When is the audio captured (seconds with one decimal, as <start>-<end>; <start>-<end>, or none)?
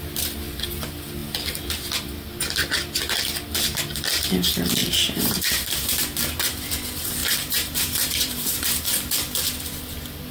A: 0.0-4.8; 6.0-7.2; 8.7-10.3